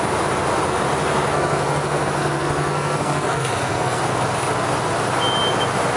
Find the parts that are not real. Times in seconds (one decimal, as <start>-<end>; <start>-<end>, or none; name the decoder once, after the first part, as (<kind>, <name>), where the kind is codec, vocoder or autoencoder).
1.2-4.0 (codec, SNAC)